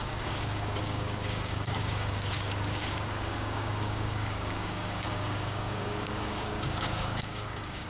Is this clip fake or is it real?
fake